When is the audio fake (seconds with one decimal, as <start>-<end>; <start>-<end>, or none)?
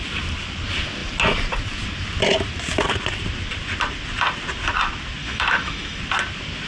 5.2-6.0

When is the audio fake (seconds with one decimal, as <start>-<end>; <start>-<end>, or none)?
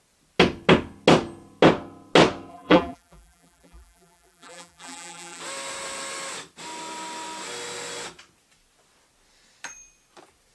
2.5-5.4